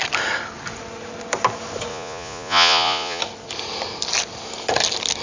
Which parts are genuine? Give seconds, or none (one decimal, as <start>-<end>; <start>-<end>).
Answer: 0.0-1.9; 3.2-5.2